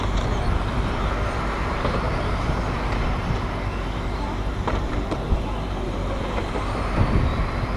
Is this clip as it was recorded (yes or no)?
no